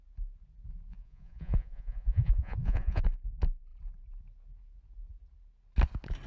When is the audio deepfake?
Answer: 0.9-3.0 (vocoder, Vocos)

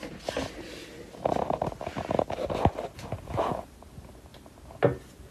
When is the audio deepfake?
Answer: none

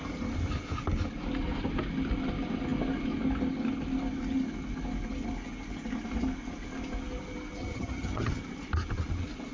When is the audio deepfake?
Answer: 7.6-8.4 (vocoder, HiFi-GAN)

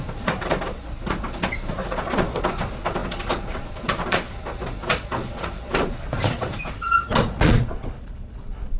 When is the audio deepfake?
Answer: 0.0-8.8 (vocoder, Vocos)

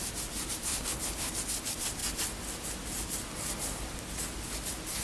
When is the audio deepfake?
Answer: 0.7-1.3 (codec, HILCodec)

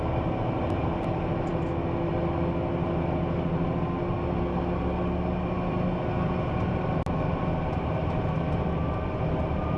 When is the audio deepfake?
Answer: none

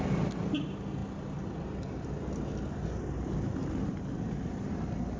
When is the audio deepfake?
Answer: none

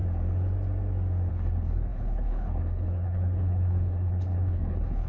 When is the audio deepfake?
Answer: 1.3-5.1 (codec, HILCodec)